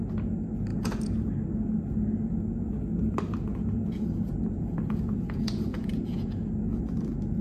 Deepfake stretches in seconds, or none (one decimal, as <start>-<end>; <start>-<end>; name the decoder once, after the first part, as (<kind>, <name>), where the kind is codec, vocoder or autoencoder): 0.7-1.3 (vocoder, Vocos); 3.5-6.8